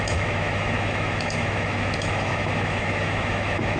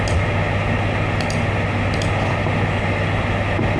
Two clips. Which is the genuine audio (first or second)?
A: second